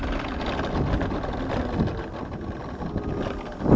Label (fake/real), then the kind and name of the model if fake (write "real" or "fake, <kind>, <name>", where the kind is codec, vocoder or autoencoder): real